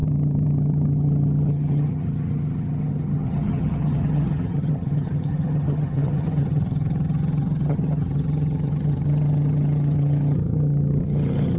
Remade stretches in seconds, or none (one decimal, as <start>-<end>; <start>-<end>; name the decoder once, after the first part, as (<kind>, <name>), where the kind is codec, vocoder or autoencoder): 0.0-11.6 (vocoder, HiFi-GAN)